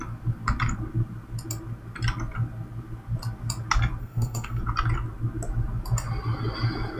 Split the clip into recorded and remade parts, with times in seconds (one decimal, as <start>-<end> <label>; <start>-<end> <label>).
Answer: 0.0-4.0 recorded; 4.0-4.6 remade; 4.6-7.0 recorded